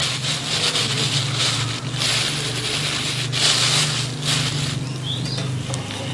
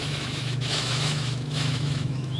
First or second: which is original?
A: first